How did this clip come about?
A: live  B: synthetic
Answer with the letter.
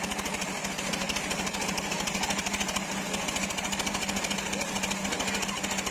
A